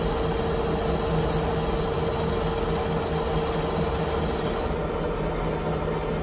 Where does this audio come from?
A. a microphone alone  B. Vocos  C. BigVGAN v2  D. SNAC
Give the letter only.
A